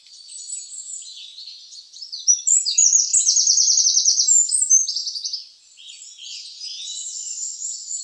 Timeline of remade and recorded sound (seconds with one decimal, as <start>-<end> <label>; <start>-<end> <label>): 0.0-8.0 recorded